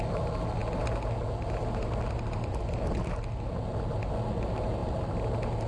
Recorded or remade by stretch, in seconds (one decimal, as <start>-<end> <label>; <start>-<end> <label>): 0.0-5.7 recorded